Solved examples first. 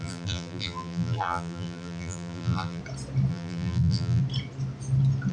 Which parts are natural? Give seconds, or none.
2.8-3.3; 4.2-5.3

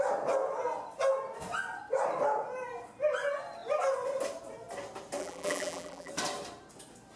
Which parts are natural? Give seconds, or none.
0.0-5.2; 6.1-7.2

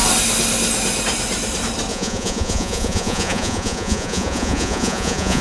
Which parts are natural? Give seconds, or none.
0.0-1.9

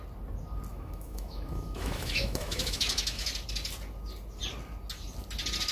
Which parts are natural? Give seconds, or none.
0.0-0.7; 3.3-5.7

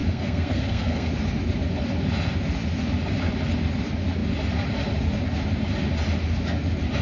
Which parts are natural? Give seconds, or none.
1.1-7.0

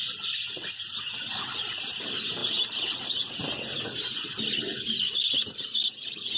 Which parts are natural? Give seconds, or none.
0.0-6.4

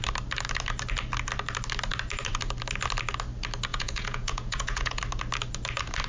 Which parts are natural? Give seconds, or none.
0.0-3.7; 5.0-6.1